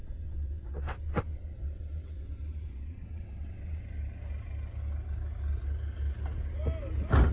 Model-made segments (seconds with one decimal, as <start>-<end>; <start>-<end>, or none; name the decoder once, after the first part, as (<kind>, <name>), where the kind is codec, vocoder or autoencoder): 0.0-3.8 (vocoder, WaveNeXt)